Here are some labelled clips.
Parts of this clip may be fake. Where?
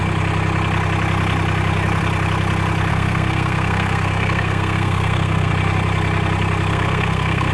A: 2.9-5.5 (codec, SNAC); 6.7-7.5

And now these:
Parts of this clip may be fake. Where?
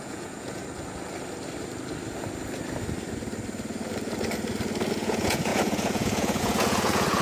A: 0.0-0.6 (vocoder, Vocos); 4.9-7.2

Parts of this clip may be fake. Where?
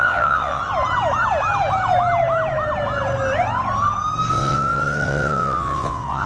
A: 0.0-0.6 (vocoder, WaveNeXt); 4.3-6.3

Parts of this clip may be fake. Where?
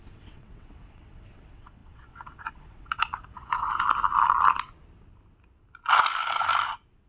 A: 0.0-3.7 (vocoder, WaveNeXt)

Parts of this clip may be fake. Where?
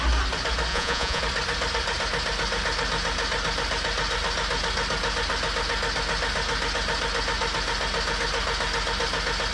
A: 0.7-1.2 (vocoder, Vocos)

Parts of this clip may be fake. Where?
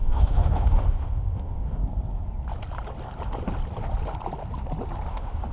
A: 0.0-1.8 (autoencoder, DAC-VAE); 5.1-5.5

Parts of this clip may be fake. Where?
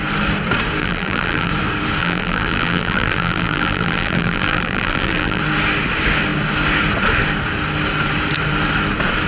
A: 0.8-1.5 (vocoder, BigVGAN v2); 2.0-5.4